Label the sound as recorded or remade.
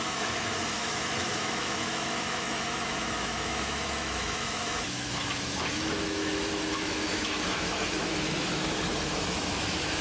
remade